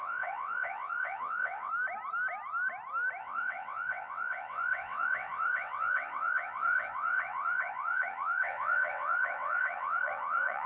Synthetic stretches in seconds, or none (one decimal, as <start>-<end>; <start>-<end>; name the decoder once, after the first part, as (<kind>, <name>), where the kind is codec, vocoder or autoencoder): 0.0-1.7 (vocoder, WaveNeXt); 3.2-10.7